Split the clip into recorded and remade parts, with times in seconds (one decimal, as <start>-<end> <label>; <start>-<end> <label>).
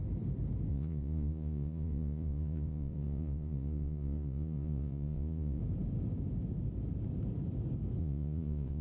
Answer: 0.0-0.7 recorded; 0.7-5.6 remade; 5.6-8.0 recorded; 8.0-8.8 remade